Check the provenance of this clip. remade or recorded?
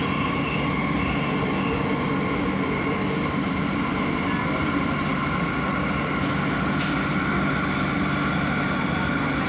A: recorded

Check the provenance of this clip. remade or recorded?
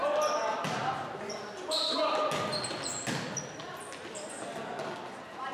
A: recorded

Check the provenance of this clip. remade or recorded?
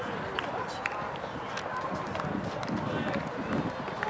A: recorded